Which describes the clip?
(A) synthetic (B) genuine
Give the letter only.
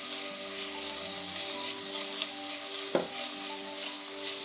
B